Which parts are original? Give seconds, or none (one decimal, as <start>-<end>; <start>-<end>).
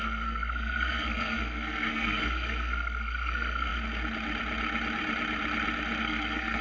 3.7-6.0